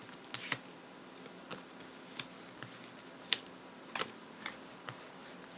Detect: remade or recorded remade